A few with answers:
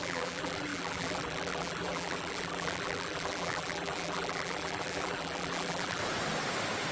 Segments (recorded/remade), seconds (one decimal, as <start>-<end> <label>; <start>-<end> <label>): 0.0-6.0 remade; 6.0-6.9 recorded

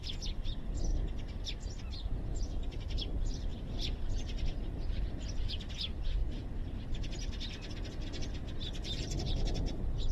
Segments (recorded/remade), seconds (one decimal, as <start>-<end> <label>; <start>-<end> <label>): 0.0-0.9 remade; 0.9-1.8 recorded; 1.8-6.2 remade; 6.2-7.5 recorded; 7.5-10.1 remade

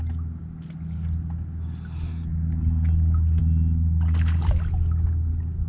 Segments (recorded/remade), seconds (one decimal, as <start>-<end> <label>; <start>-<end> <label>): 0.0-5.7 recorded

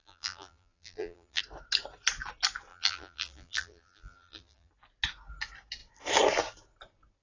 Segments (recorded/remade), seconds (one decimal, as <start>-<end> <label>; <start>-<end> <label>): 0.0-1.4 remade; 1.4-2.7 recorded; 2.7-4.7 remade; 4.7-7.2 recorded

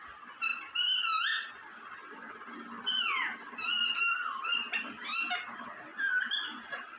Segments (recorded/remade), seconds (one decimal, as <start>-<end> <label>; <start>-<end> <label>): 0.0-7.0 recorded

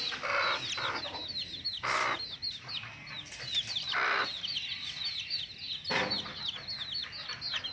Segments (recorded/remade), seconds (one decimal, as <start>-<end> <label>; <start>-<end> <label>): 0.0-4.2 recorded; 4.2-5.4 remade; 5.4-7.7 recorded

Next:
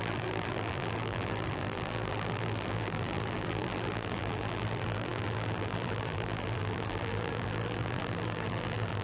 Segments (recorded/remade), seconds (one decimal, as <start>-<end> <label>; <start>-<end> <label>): 0.0-9.0 remade

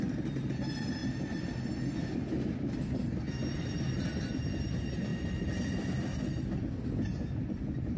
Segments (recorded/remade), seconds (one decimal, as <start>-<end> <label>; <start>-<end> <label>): 0.0-1.0 remade; 1.0-3.8 recorded; 3.8-5.1 remade; 5.1-8.0 recorded